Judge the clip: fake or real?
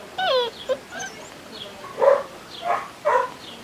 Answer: real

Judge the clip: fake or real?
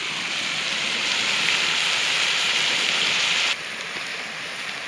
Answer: fake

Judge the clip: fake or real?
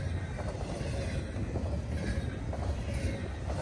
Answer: real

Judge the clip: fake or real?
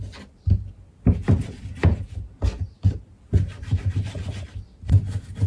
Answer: real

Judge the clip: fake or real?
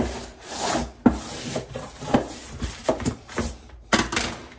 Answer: fake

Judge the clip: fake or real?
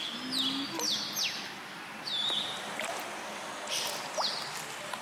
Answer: real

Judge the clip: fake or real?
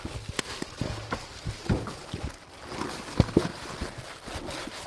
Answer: real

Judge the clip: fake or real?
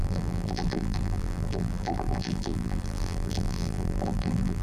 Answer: fake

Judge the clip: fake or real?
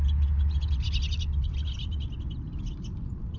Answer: real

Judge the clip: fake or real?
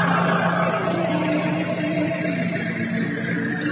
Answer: real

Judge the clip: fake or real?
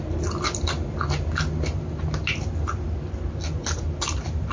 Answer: real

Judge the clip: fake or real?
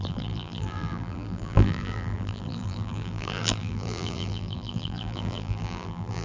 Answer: fake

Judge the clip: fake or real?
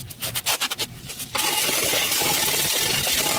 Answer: fake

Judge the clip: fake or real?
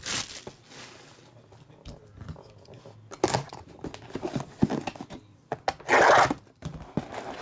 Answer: real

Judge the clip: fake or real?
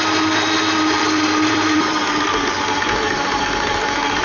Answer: fake